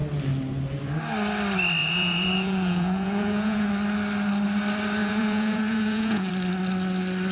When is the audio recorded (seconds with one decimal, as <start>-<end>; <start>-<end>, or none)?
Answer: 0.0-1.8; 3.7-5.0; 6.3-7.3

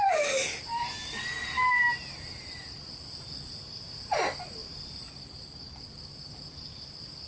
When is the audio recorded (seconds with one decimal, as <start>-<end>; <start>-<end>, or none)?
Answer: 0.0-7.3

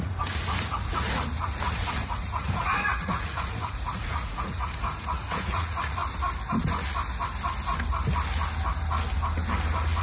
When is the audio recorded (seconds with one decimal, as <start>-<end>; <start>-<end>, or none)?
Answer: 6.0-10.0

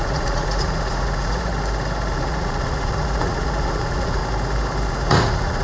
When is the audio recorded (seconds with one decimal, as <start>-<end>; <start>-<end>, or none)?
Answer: 1.5-2.1; 4.2-4.9

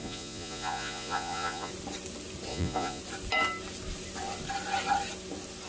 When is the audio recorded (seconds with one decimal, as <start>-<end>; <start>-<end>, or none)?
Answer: 1.7-2.5; 3.0-5.7

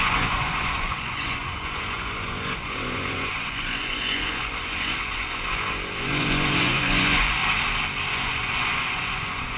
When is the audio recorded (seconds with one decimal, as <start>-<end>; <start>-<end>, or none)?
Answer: 7.4-8.1

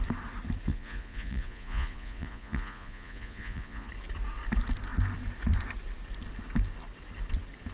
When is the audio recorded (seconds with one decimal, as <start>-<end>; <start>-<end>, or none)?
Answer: 0.0-0.7; 3.9-7.7

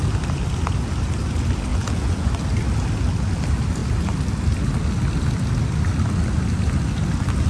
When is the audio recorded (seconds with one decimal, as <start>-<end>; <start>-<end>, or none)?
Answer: 0.0-1.7; 2.3-7.5